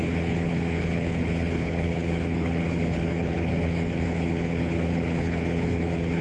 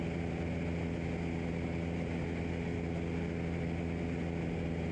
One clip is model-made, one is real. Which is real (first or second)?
second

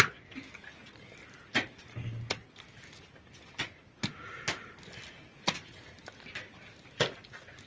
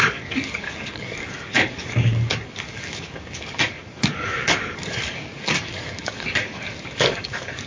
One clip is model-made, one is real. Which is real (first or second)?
first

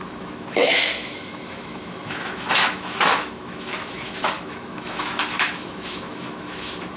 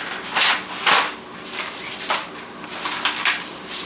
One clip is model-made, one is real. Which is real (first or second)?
second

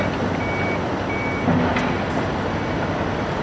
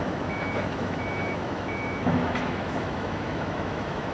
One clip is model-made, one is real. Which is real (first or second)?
first